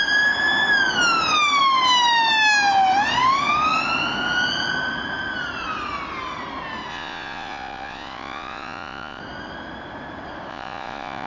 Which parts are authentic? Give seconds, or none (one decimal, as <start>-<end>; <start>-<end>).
0.0-6.9; 9.2-10.5